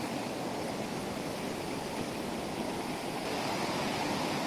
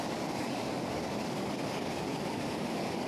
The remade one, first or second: second